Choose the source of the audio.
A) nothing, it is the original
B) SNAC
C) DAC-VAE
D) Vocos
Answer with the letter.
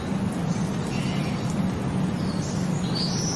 A